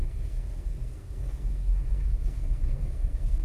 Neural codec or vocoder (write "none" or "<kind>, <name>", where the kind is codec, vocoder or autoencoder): codec, SNAC